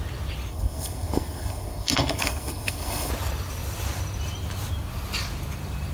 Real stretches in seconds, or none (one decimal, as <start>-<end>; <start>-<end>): 0.0-0.5; 3.1-5.9